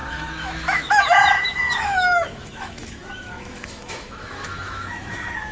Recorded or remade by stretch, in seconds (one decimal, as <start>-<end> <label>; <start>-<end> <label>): 0.0-5.5 remade